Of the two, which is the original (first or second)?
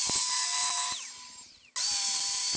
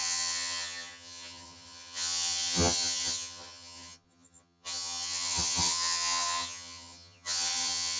first